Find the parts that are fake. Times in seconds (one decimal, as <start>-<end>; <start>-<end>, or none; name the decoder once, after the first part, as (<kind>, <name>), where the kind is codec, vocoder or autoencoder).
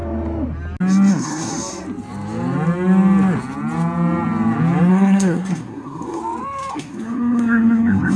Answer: 1.1-1.5 (codec, SNAC); 4.9-6.2; 6.7-8.2